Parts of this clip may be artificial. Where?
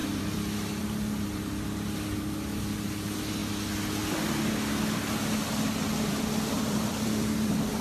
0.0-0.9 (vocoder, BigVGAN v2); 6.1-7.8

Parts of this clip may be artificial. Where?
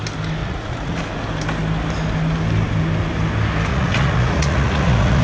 0.4-1.0 (vocoder, Vocos); 3.7-5.2